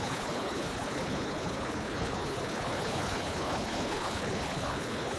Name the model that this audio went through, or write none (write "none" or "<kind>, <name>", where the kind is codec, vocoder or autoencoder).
codec, HILCodec